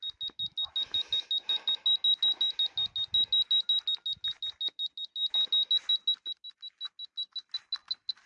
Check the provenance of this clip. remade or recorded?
recorded